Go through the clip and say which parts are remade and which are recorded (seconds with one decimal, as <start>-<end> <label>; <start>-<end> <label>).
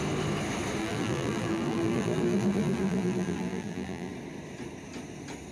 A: 0.0-0.8 recorded; 0.8-4.1 remade; 4.1-5.5 recorded